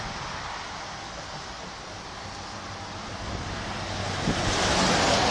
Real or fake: real